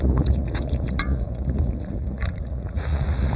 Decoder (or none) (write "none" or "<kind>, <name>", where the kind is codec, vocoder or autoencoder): vocoder, Vocos